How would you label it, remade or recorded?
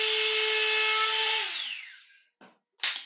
recorded